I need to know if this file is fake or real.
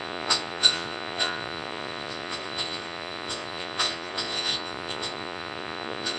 fake